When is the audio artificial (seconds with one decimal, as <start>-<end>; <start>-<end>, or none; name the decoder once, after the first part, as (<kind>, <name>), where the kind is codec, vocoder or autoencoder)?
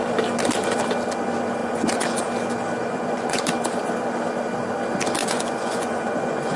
1.6-2.2 (vocoder, Vocos); 2.8-3.4; 5.2-6.6